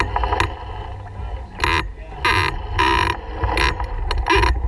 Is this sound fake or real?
real